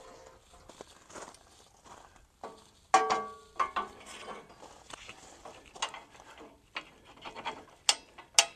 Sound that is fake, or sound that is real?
real